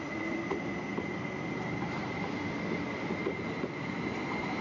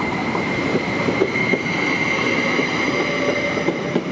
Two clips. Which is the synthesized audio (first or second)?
second